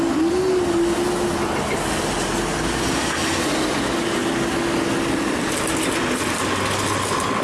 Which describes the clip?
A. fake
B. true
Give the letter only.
B